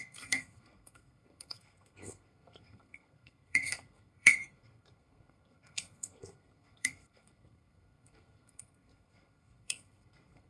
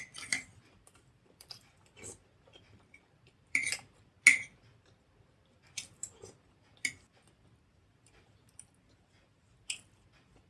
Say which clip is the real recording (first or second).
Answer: second